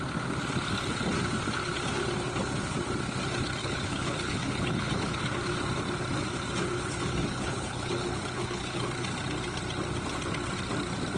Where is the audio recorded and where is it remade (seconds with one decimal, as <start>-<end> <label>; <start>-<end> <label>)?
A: 0.0-3.6 recorded; 3.6-5.3 remade; 5.3-7.2 recorded; 7.2-8.9 remade; 8.9-11.2 recorded